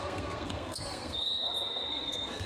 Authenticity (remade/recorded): remade